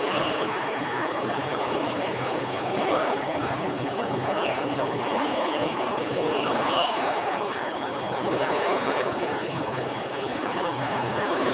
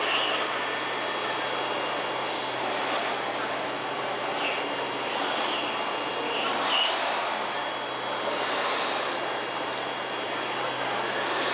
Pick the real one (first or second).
second